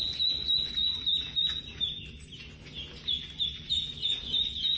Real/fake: real